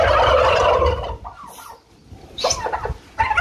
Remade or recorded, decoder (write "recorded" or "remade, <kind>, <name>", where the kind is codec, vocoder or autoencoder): recorded